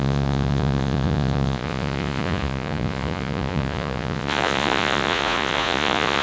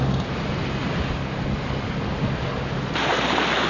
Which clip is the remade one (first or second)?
first